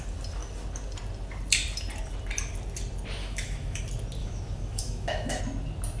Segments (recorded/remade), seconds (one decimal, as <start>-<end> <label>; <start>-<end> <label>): 0.0-3.2 recorded; 3.2-3.8 remade; 3.8-4.2 recorded; 4.2-5.4 remade; 5.4-6.0 recorded